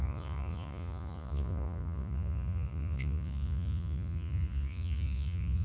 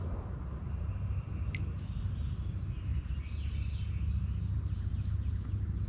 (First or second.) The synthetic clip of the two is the first